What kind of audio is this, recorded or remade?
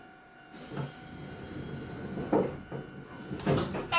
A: recorded